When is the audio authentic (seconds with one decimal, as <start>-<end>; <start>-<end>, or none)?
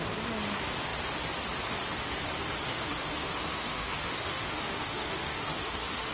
0.0-2.7